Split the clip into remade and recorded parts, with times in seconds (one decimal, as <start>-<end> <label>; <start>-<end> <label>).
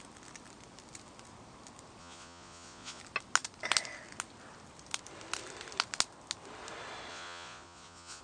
0.0-2.0 recorded; 2.0-3.0 remade; 3.0-7.1 recorded; 7.1-8.2 remade